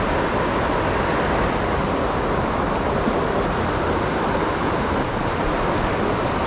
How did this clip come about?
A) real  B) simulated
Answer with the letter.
A